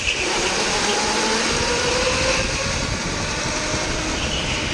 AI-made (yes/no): no